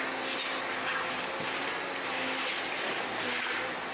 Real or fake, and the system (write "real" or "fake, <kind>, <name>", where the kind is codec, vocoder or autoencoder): real